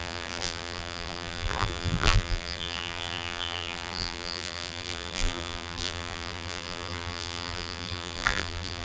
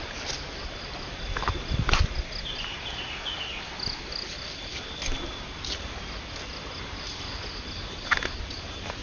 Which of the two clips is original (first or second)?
second